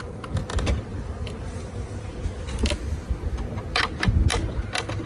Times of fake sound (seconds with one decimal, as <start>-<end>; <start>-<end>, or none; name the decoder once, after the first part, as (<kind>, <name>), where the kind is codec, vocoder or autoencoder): 0.9-2.2 (vocoder, BigVGAN v2)